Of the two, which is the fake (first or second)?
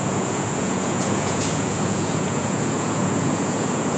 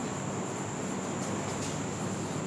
first